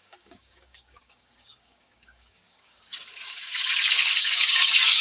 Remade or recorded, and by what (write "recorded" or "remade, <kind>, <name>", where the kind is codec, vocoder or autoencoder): remade, codec, DAC